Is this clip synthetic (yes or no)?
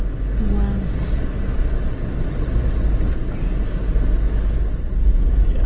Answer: no